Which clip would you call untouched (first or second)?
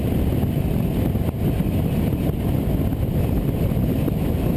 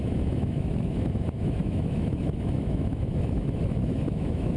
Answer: first